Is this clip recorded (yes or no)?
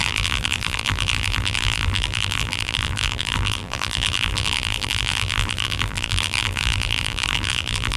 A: no